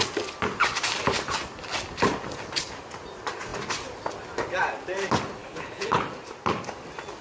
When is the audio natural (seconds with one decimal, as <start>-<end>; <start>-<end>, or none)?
0.0-5.4; 6.0-7.2